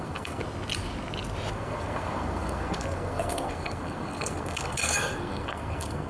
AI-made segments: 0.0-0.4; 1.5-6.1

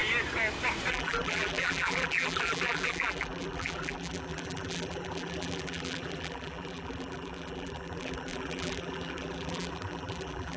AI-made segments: 0.9-10.6

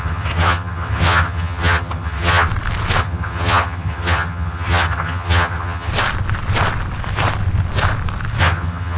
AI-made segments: 0.0-2.5; 3.0-5.9; 8.4-9.0

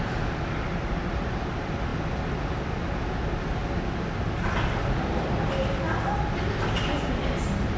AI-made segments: 0.7-1.5

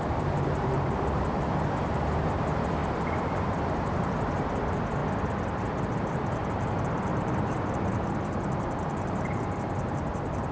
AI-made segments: 0.0-2.8; 3.7-5.0; 5.9-10.5

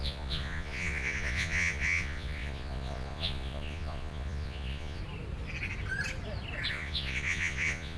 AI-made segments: 0.0-5.0; 6.7-8.0

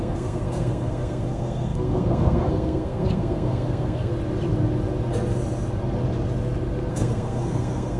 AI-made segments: 0.0-4.1; 6.9-8.0